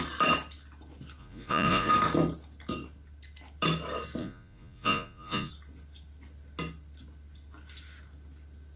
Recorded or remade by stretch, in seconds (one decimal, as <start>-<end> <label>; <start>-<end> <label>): 0.0-1.2 recorded; 1.2-1.9 remade; 1.9-4.2 recorded; 4.2-5.5 remade; 5.5-8.8 recorded